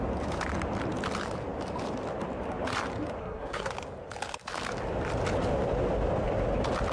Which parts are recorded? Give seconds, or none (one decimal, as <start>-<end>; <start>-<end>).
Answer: 0.0-3.2; 3.7-6.9